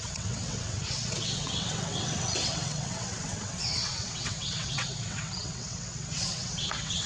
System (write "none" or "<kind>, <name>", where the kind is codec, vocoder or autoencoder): vocoder, WaveNeXt